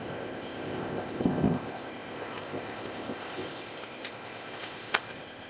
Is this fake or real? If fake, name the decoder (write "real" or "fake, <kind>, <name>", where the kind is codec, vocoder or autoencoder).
fake, codec, ZipCodec